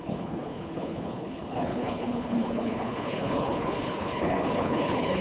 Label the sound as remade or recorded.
remade